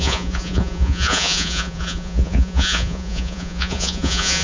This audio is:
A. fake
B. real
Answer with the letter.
A